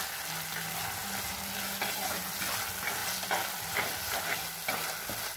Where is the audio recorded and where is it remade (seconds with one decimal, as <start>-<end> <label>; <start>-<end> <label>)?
0.0-5.4 recorded